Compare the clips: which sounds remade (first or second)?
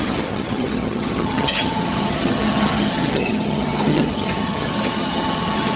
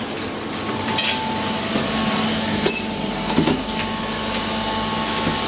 first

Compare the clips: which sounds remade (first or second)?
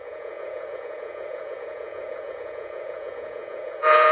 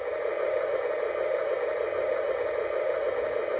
first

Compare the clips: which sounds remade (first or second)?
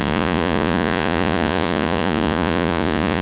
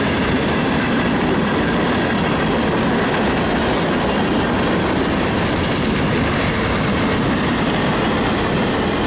first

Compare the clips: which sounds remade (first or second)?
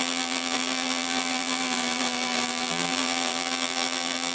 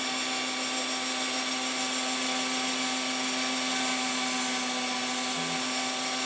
first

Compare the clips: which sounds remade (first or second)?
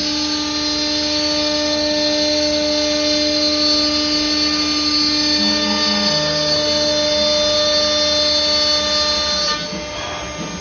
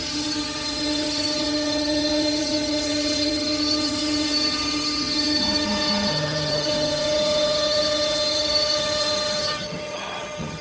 second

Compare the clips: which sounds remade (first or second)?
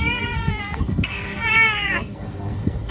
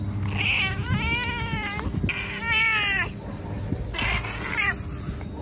first